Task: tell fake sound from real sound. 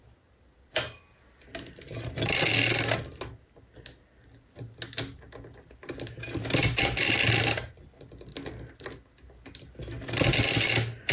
real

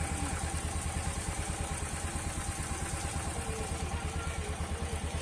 real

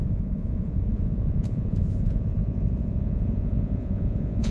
fake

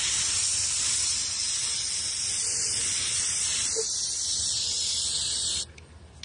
real